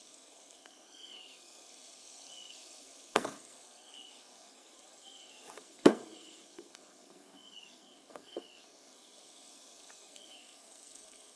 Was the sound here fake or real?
fake